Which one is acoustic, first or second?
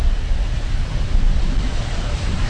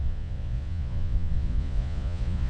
first